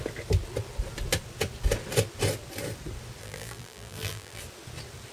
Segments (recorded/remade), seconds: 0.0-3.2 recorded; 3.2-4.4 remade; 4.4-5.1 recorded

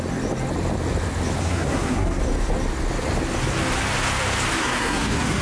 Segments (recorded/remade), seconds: 0.0-1.4 recorded; 1.4-2.2 remade; 2.2-4.6 recorded; 4.6-5.4 remade

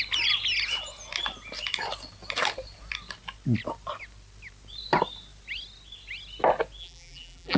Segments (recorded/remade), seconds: 0.0-6.8 recorded; 6.8-7.6 remade

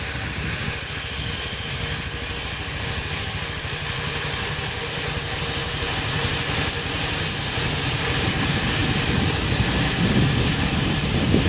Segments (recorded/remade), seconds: 0.0-5.6 recorded; 5.6-6.4 remade; 6.4-11.5 recorded

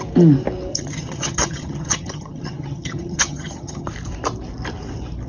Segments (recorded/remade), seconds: 0.0-0.7 recorded; 0.7-3.9 remade; 3.9-5.3 recorded

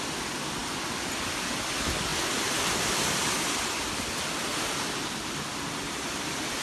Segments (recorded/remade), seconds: 0.0-6.6 recorded